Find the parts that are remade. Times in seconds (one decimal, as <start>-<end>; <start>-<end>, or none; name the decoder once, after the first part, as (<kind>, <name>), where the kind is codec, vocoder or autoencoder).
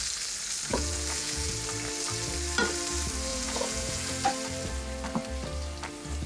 0.7-1.5 (vocoder, Vocos); 3.3-4.1